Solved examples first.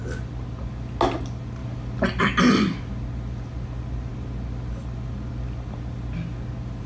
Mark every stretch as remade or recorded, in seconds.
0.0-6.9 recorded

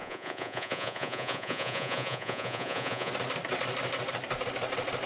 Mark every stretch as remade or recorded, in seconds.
0.0-3.1 remade; 3.1-5.1 recorded

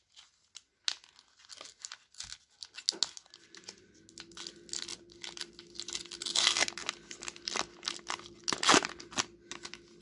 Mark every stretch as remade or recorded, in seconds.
0.0-10.0 recorded

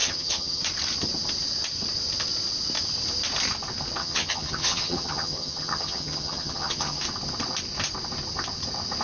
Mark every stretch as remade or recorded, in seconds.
0.0-0.6 remade; 0.6-4.0 recorded; 4.0-7.0 remade; 7.0-9.0 recorded